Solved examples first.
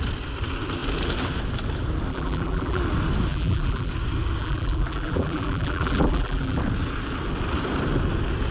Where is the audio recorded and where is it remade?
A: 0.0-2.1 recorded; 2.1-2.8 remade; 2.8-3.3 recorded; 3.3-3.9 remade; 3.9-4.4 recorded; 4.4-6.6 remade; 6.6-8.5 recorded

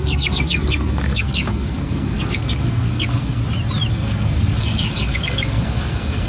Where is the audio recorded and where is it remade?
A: 0.0-3.4 remade; 3.4-3.9 recorded; 3.9-6.3 remade

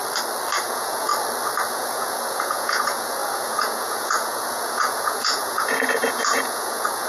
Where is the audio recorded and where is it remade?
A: 0.0-0.6 recorded; 0.6-1.1 remade; 1.1-1.7 recorded; 1.7-7.1 remade

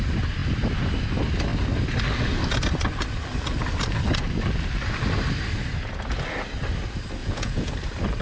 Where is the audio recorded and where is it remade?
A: 0.0-7.2 recorded; 7.2-7.7 remade; 7.7-8.2 recorded

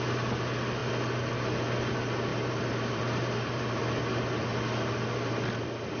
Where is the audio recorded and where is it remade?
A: 0.0-2.3 recorded; 2.3-3.8 remade; 3.8-6.0 recorded